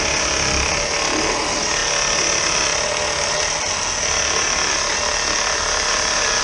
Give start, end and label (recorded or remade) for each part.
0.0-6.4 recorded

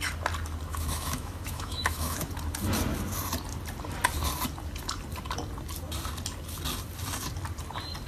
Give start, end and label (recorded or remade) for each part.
0.0-0.7 recorded; 0.7-2.3 remade; 2.3-8.1 recorded

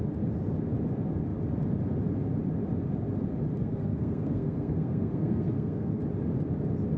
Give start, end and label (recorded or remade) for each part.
0.0-3.6 recorded; 3.6-6.0 remade; 6.0-7.0 recorded

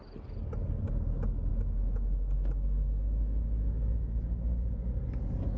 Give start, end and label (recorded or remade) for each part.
0.0-1.5 recorded; 1.5-4.9 remade; 4.9-5.6 recorded

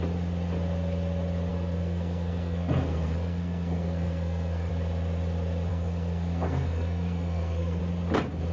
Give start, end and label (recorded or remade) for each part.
0.0-1.5 recorded; 1.5-4.7 remade; 4.7-5.7 recorded; 5.7-7.8 remade; 7.8-8.5 recorded

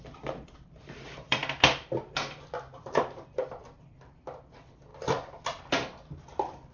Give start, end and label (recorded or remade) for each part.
0.0-1.4 remade; 1.4-2.8 recorded; 2.8-4.9 remade; 4.9-6.2 recorded; 6.2-6.7 remade

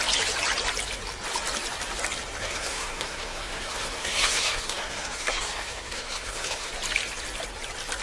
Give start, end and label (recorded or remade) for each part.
0.0-2.4 recorded; 2.4-6.7 remade; 6.7-8.0 recorded